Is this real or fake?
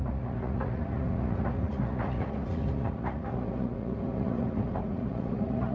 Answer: fake